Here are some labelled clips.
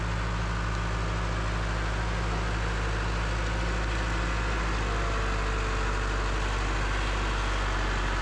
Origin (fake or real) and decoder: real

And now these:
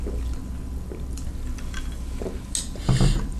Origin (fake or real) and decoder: real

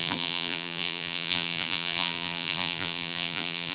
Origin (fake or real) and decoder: fake, vocoder, BigVGAN v2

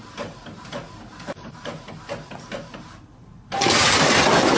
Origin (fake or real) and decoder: fake, vocoder, BigVGAN v2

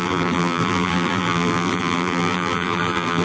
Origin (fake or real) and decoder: fake, vocoder, BigVGAN v2